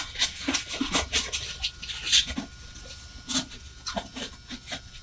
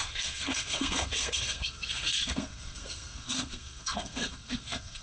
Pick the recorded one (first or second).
first